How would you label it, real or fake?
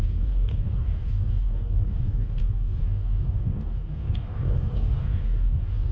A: fake